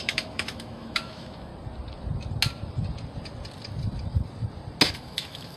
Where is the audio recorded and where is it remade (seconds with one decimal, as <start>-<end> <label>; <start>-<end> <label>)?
0.0-1.5 remade; 1.5-4.9 recorded; 4.9-5.6 remade